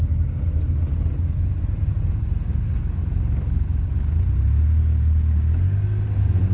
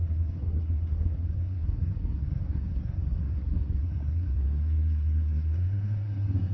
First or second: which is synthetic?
second